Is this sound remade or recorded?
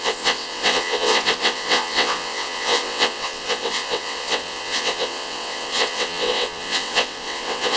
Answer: remade